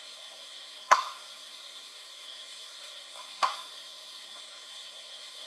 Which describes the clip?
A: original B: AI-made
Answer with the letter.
B